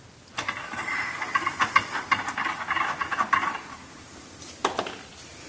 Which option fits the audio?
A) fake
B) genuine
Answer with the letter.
B